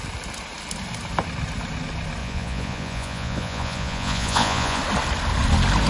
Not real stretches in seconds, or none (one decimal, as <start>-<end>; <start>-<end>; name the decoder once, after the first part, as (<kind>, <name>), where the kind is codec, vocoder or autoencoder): 2.2-4.8 (vocoder, Vocos)

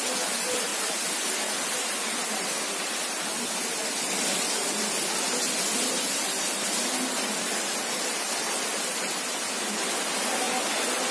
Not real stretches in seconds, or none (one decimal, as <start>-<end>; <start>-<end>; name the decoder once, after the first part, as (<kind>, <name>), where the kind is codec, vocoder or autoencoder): none

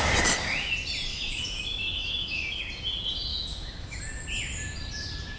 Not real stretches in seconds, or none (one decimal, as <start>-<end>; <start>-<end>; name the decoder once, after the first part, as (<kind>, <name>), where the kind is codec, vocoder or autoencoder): 1.1-2.6 (autoencoder, DAC-VAE); 3.3-4.0

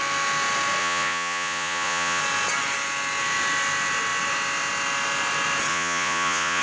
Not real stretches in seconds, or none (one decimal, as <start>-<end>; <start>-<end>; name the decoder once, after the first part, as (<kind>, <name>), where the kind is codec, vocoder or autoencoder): 0.8-2.2 (vocoder, Vocos); 5.7-6.6

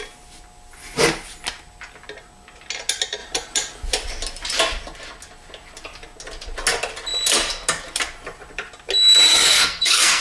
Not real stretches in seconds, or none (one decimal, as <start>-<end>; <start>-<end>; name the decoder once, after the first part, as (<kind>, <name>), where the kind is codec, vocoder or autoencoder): 9.3-10.2 (codec, SNAC)

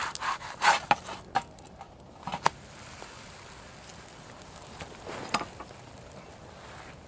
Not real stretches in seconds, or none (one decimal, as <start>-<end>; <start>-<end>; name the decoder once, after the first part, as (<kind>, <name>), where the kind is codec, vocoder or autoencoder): none

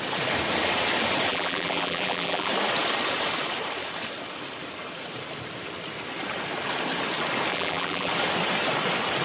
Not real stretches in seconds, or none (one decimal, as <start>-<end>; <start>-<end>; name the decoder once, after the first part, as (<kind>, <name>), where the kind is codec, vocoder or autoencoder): 1.3-2.5 (vocoder, BigVGAN v2); 7.5-8.1

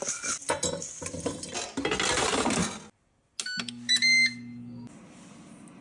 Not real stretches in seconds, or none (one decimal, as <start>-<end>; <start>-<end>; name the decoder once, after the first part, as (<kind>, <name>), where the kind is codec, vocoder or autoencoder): none